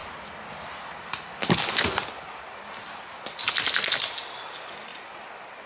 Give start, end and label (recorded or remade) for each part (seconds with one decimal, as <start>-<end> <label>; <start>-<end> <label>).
0.0-5.7 recorded